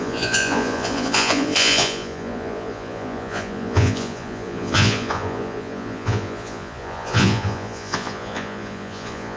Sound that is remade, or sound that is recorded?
remade